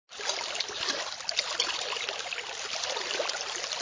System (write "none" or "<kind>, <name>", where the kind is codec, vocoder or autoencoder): none